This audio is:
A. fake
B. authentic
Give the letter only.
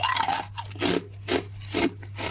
B